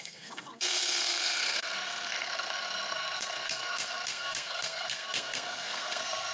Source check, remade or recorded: remade